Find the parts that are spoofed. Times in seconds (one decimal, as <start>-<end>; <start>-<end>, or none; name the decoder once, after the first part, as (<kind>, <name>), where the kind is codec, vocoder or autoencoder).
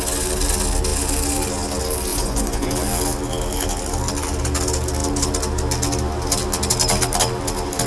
2.1-2.7 (vocoder, Vocos)